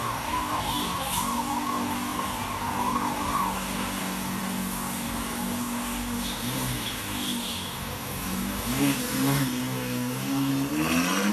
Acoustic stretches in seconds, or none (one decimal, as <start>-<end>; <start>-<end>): 10.5-11.3